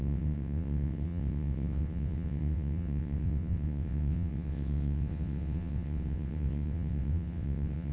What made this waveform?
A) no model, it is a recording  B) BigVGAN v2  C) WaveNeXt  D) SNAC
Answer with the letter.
C